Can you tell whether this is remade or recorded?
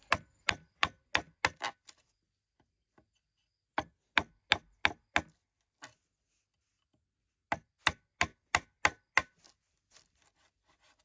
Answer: recorded